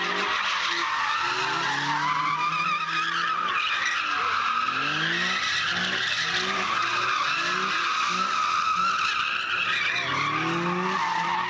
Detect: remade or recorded recorded